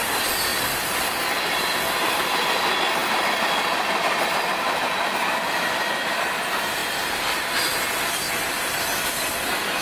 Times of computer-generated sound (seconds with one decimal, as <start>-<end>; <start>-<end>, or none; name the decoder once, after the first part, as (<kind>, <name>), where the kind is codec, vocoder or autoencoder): 0.5-1.0 (vocoder, BigVGAN v2); 3.0-6.3